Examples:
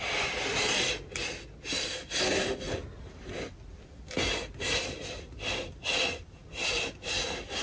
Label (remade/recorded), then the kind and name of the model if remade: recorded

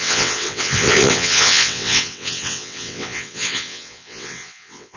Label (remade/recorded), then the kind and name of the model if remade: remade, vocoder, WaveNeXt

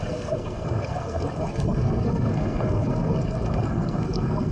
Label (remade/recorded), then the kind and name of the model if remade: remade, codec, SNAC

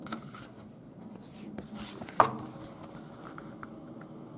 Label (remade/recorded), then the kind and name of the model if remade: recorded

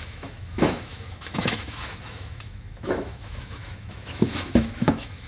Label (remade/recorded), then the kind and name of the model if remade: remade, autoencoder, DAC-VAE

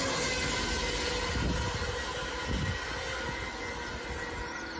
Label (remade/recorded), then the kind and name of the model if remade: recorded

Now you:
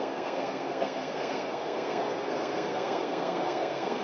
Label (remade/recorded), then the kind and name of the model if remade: remade, codec, SNAC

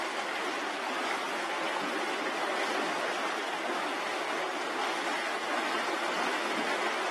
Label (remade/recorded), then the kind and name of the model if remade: recorded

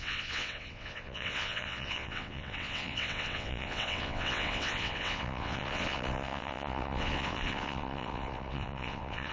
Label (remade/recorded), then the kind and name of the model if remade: remade, vocoder, WaveNeXt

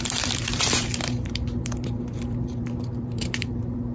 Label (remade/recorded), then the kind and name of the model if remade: remade, vocoder, BigVGAN v2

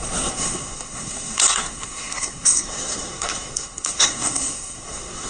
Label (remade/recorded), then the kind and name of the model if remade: remade, codec, SNAC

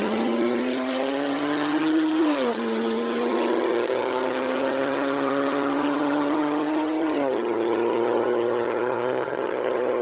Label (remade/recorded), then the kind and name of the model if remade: remade, vocoder, HiFi-GAN